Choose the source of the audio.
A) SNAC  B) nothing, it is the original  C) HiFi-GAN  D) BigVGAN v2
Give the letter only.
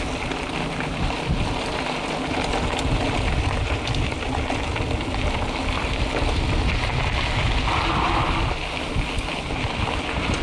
B